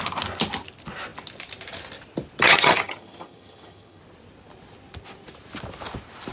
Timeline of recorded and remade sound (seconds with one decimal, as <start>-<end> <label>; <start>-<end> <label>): 0.0-2.4 recorded; 2.4-4.0 remade; 4.0-6.3 recorded

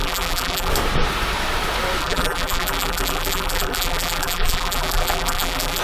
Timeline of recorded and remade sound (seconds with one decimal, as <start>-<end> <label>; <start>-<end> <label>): 0.0-0.7 remade; 0.7-2.0 recorded; 2.0-5.8 remade

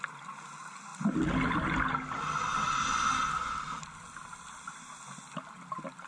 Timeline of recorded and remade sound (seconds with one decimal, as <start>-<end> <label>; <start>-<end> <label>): 0.0-6.1 recorded

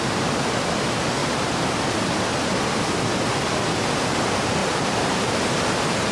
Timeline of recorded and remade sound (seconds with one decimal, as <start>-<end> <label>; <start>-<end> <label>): 0.0-1.2 recorded; 1.2-1.9 remade; 1.9-4.6 recorded; 4.6-5.3 remade; 5.3-6.1 recorded

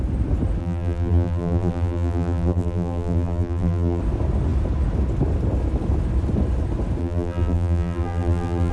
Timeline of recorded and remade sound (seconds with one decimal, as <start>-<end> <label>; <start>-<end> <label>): 0.0-0.6 recorded; 0.6-4.0 remade; 4.0-7.0 recorded; 7.0-8.7 remade

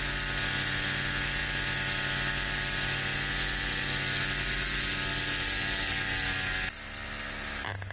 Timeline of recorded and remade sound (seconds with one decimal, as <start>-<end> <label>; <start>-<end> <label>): 0.0-7.9 recorded

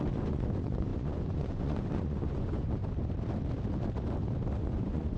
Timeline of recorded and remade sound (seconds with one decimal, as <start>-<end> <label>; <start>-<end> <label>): 0.0-2.8 remade; 2.8-4.6 recorded; 4.6-5.2 remade

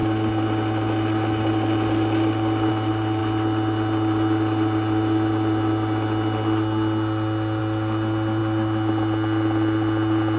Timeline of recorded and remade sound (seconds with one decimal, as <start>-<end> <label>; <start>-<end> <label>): 0.0-10.4 recorded